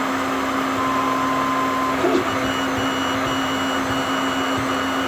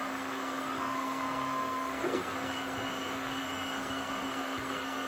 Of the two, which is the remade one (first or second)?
second